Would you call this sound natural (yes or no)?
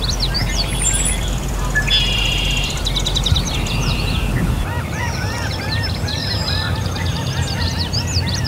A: no